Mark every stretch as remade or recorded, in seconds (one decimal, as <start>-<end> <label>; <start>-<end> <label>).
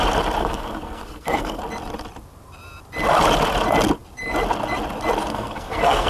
0.0-0.4 recorded; 0.4-1.6 remade; 1.6-5.3 recorded; 5.3-6.1 remade